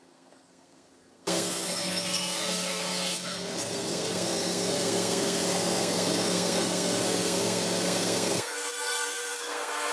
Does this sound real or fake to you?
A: fake